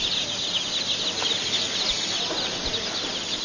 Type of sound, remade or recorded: recorded